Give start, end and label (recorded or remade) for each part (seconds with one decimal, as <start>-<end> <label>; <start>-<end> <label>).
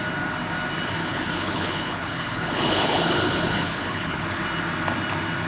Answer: 0.0-1.1 recorded; 1.1-4.4 remade; 4.4-5.5 recorded